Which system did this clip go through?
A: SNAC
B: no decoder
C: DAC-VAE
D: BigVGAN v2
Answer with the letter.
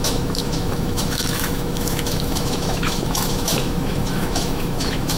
C